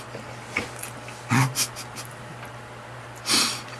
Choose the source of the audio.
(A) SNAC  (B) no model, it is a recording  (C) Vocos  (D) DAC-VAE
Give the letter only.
B